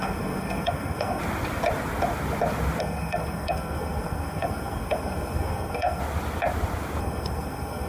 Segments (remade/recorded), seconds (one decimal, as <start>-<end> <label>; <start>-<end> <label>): 0.0-1.2 remade; 1.2-2.8 recorded; 2.8-6.0 remade; 6.0-7.0 recorded; 7.0-7.9 remade